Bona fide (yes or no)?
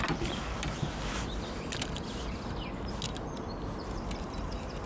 yes